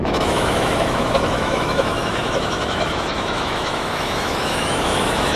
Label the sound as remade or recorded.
remade